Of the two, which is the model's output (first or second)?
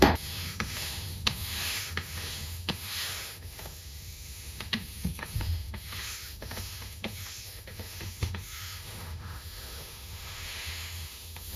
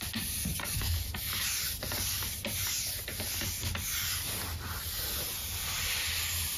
first